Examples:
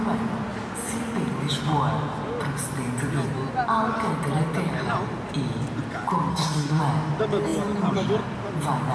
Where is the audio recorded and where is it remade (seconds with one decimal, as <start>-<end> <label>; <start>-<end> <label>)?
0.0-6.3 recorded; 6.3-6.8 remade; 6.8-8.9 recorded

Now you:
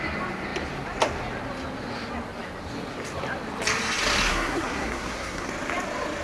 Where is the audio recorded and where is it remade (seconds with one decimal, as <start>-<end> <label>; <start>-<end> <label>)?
0.0-4.3 recorded; 4.3-5.5 remade; 5.5-6.2 recorded

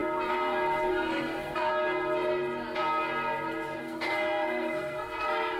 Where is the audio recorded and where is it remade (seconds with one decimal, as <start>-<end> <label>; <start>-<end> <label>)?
0.0-0.9 recorded; 0.9-1.7 remade; 1.7-3.8 recorded; 3.8-5.6 remade

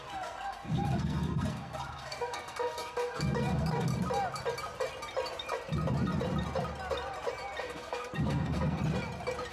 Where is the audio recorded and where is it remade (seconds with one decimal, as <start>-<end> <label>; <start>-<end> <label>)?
0.0-3.9 remade; 3.9-7.6 recorded; 7.6-8.8 remade; 8.8-9.5 recorded